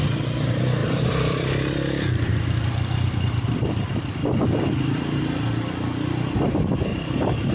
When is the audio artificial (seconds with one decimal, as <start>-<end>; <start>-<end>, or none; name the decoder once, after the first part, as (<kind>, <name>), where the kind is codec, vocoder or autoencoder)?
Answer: 0.8-5.2 (vocoder, BigVGAN v2); 6.9-7.5